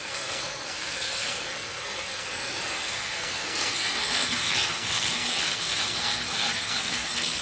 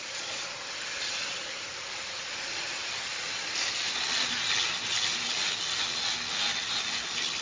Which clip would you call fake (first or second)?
first